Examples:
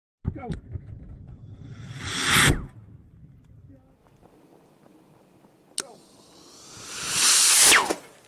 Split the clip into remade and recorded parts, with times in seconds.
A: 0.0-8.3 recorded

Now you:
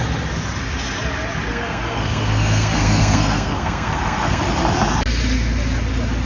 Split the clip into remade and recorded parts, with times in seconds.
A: 0.0-1.5 recorded; 1.5-4.4 remade; 4.4-6.3 recorded

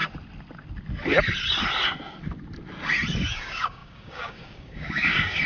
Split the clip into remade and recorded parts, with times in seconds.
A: 0.0-3.3 recorded; 3.3-5.5 remade